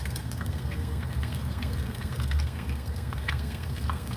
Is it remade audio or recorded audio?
remade